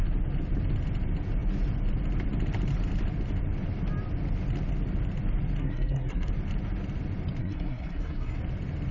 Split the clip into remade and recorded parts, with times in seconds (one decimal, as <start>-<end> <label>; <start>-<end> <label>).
0.0-5.6 recorded; 5.6-6.3 remade; 6.3-7.4 recorded; 7.4-8.4 remade; 8.4-8.9 recorded

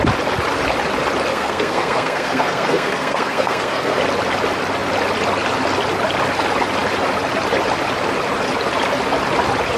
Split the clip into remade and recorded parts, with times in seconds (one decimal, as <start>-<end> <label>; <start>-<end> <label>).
0.0-1.3 recorded; 1.3-4.0 remade; 4.0-9.8 recorded

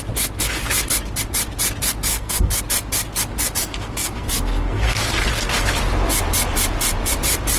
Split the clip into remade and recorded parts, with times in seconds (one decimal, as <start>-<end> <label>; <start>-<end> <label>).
0.0-2.1 recorded; 2.1-2.6 remade; 2.6-3.6 recorded; 3.6-5.8 remade; 5.8-7.6 recorded

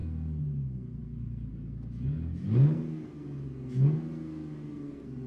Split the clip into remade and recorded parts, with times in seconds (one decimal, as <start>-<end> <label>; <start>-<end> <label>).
0.0-5.3 remade

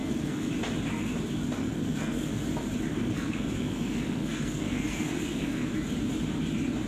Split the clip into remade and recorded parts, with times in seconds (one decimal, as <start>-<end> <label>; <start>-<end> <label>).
0.0-0.5 remade; 0.5-1.6 recorded; 1.6-2.4 remade; 2.4-2.9 recorded; 2.9-5.7 remade; 5.7-6.9 recorded

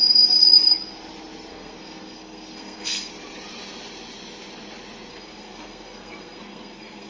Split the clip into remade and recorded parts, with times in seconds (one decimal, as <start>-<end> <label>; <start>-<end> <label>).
0.0-1.5 recorded; 1.5-3.1 remade; 3.1-5.1 recorded; 5.1-7.1 remade

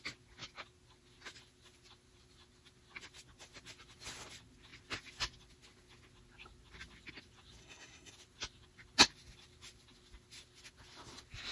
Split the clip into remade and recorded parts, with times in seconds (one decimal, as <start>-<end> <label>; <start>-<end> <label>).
0.0-7.6 recorded; 7.6-8.1 remade; 8.1-11.5 recorded